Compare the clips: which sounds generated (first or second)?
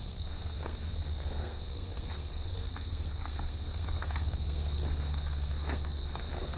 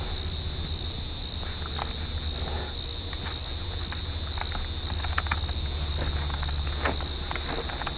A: first